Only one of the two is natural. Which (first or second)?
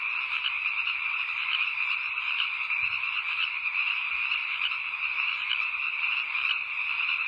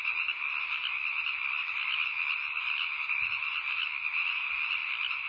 second